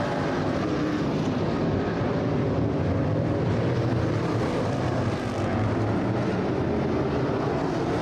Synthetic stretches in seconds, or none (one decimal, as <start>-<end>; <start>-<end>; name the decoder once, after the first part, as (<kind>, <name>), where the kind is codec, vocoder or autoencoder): 0.0-5.5 (vocoder, BigVGAN v2); 7.2-8.0